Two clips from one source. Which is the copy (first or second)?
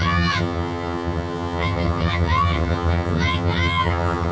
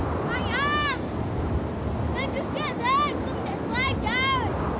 first